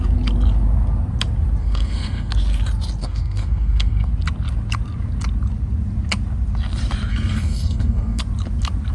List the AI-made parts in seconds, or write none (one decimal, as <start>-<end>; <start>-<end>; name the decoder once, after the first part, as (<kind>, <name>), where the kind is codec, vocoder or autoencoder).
1.6-2.3 (codec, SNAC); 3.0-4.1; 7.1-8.2